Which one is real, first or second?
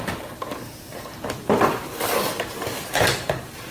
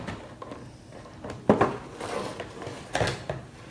second